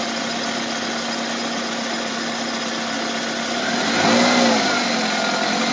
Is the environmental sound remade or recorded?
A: recorded